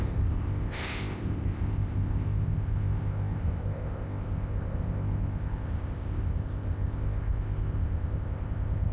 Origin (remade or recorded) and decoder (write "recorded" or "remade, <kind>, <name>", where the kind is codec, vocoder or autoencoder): remade, codec, ZipCodec